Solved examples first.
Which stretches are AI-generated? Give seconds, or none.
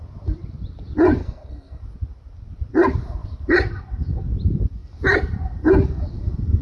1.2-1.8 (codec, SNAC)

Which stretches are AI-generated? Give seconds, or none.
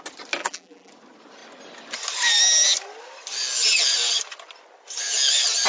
0.4-0.9 (vocoder, BigVGAN v2)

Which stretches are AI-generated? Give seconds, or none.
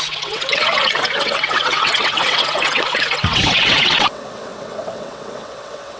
0.0-6.0 (vocoder, WaveNeXt)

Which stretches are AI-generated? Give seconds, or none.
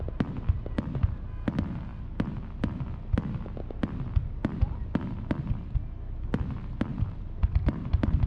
6.9-8.3 (vocoder, BigVGAN v2)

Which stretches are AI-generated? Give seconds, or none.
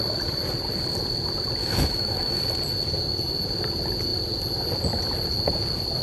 1.6-2.4 (autoencoder, DAC-VAE)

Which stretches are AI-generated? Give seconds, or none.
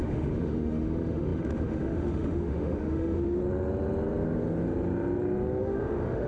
0.0-3.4 (autoencoder, DAC-VAE); 5.6-6.3